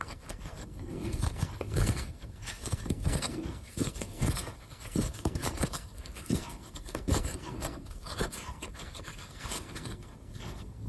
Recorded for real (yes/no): no